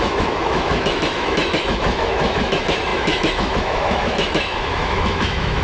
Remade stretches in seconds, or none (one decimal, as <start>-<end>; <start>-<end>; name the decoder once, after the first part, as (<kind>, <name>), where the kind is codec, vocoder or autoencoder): 0.0-5.6 (autoencoder, DAC-VAE)